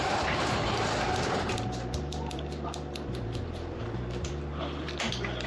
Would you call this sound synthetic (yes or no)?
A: yes